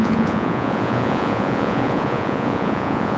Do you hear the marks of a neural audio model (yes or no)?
yes